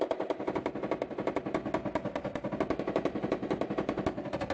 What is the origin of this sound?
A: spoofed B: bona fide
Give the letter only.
B